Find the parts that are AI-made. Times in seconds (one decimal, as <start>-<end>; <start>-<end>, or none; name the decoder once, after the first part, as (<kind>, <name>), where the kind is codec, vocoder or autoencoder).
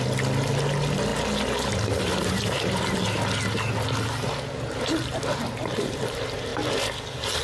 none